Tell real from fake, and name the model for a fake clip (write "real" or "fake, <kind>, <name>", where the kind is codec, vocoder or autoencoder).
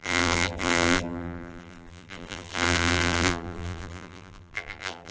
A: fake, vocoder, BigVGAN v2